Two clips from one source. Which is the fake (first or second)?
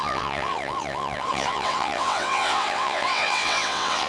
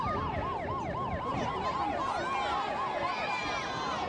first